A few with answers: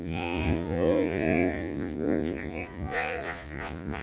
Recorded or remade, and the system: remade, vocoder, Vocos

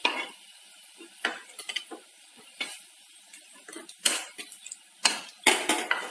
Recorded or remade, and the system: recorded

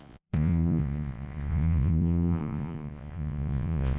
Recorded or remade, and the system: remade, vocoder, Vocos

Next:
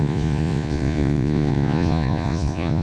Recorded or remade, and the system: remade, vocoder, Vocos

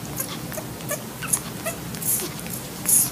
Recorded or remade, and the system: recorded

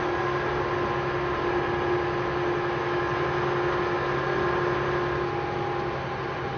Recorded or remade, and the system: recorded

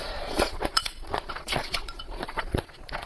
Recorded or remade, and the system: remade, vocoder, Vocos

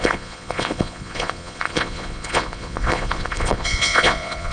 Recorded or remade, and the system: remade, vocoder, Vocos